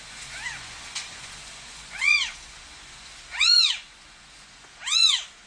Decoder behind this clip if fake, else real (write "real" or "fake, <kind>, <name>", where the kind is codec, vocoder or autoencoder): fake, vocoder, Vocos